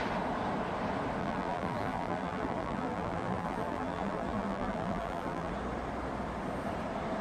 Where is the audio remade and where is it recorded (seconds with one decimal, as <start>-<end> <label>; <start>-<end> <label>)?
0.0-1.2 recorded; 1.2-5.5 remade; 5.5-7.2 recorded